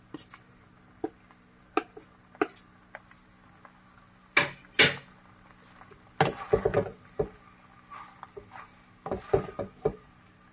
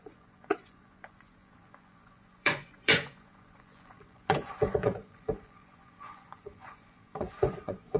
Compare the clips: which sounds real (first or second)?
first